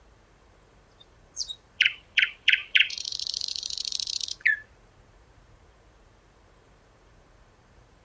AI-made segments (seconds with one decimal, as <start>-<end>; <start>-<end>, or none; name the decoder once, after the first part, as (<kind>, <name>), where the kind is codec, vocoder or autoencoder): 0.0-8.0 (vocoder, Vocos)